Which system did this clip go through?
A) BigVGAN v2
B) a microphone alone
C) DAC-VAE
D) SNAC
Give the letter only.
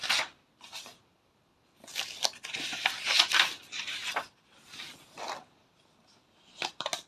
B